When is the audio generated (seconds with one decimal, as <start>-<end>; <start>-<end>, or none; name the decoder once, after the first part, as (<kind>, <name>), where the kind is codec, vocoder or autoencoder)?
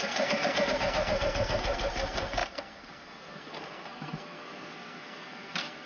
0.0-5.9 (codec, SNAC)